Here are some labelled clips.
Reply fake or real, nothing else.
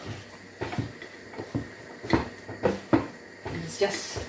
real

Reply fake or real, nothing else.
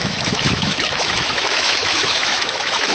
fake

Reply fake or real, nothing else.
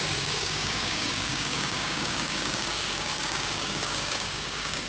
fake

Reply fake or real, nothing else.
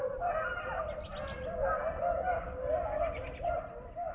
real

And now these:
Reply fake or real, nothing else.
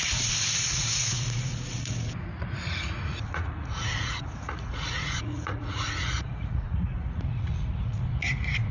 fake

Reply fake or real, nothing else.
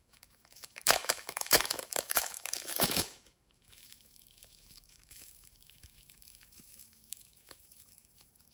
fake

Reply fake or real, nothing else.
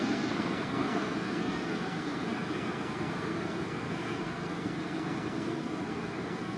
fake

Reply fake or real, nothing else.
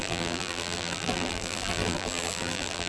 fake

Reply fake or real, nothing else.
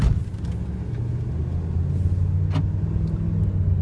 real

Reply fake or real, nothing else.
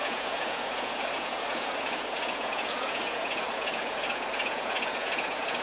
fake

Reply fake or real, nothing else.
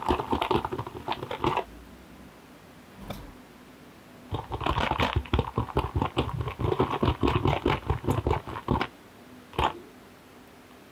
real